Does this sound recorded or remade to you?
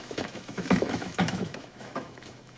remade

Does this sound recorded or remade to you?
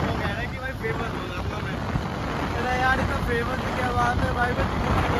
recorded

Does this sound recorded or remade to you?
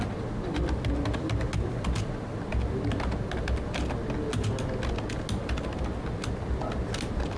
recorded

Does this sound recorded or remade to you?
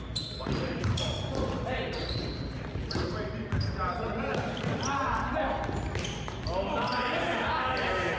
recorded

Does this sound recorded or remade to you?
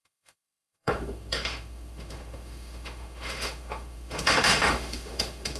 remade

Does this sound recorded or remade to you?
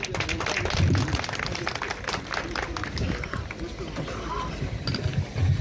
recorded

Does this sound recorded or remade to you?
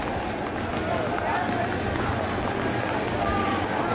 recorded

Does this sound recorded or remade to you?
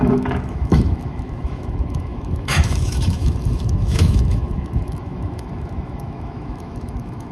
remade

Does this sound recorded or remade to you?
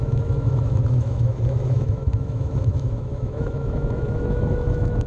remade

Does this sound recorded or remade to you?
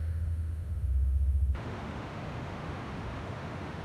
remade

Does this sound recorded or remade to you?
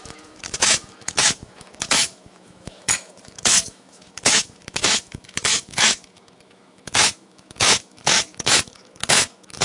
remade